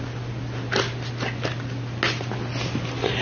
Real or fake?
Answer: real